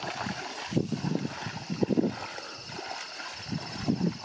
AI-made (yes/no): no